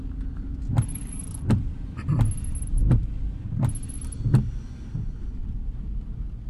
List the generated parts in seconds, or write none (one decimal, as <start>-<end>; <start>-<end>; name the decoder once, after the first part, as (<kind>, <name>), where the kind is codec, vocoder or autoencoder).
0.5-2.1 (vocoder, BigVGAN v2); 5.4-6.1